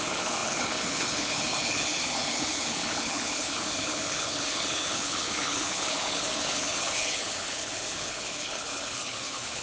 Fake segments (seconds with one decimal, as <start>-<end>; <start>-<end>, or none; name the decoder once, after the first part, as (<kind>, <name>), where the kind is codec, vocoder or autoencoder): 0.0-9.6 (codec, HILCodec)